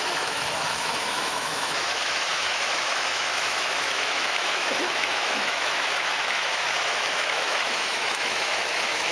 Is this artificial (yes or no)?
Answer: yes